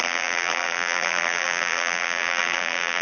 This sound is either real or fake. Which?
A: fake